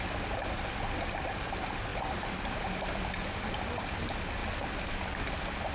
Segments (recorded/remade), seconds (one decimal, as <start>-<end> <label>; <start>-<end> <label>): 0.0-5.7 recorded